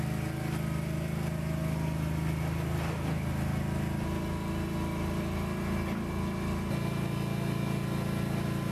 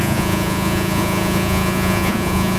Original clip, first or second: first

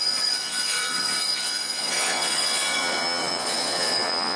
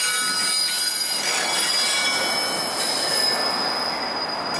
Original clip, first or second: second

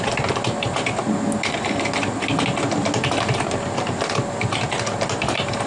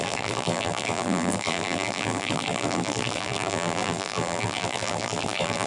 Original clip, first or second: first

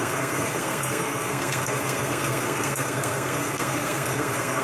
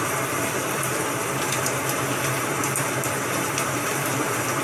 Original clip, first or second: second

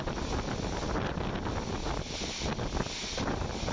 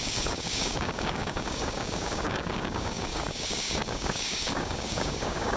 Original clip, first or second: first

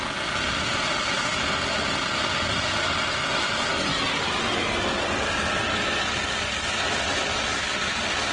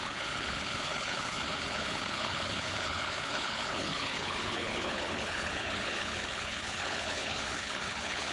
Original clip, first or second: first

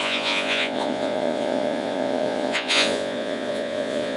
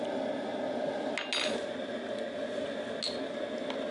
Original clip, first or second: second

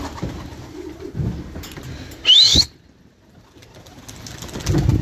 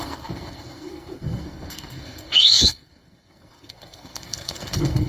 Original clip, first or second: first